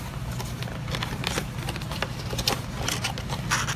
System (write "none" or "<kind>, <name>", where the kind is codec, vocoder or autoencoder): none